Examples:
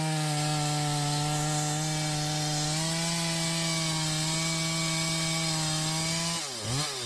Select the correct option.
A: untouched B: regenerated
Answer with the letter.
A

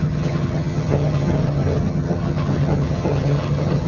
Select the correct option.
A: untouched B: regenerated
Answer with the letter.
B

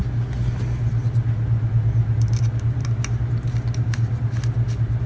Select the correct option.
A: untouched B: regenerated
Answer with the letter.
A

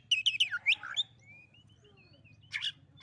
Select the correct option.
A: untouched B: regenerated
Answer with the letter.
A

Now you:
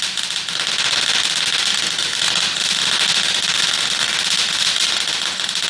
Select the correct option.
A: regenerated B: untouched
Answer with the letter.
B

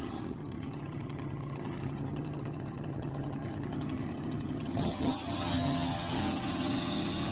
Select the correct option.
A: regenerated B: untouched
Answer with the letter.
A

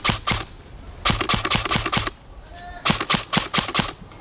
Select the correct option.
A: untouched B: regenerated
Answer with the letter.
A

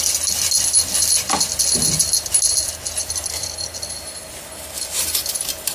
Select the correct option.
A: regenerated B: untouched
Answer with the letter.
B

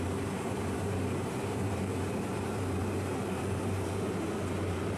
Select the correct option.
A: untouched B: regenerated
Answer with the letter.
B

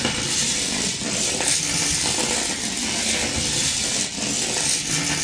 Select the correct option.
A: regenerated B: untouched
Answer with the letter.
B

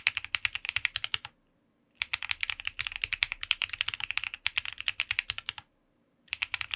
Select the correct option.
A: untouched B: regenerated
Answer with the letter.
A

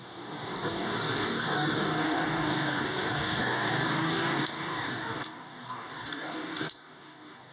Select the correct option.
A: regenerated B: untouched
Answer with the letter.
A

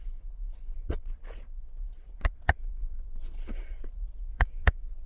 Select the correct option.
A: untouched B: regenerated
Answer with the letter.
B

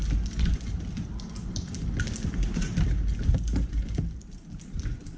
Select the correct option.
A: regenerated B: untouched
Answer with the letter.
B